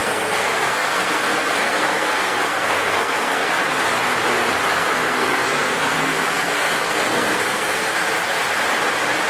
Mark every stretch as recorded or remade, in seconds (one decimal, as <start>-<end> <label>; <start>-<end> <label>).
0.0-3.6 remade; 3.6-4.7 recorded; 4.7-8.0 remade; 8.0-9.3 recorded